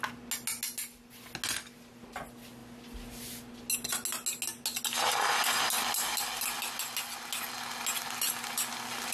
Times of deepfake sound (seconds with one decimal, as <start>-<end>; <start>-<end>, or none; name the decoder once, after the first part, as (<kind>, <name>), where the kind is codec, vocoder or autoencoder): none